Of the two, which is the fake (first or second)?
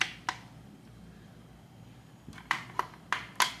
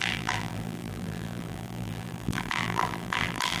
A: second